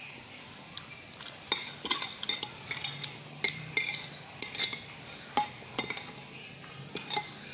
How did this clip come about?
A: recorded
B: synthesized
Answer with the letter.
A